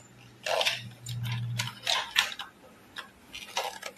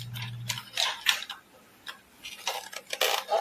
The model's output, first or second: second